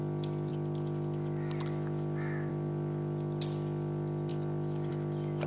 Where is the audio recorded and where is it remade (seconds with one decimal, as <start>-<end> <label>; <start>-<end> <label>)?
0.0-5.5 recorded